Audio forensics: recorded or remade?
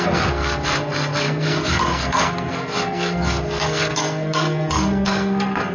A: remade